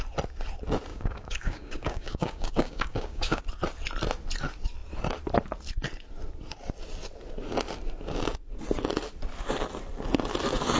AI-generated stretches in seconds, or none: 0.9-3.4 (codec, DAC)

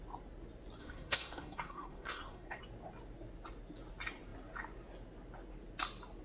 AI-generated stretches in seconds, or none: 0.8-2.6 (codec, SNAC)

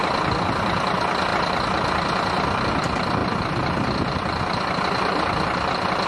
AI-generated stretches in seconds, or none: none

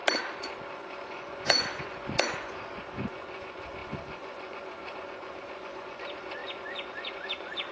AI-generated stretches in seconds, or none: 0.7-7.7 (vocoder, Vocos)